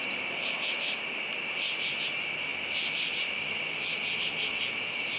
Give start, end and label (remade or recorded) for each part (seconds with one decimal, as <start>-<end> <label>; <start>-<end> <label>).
0.0-2.5 recorded; 2.5-3.4 remade; 3.4-5.2 recorded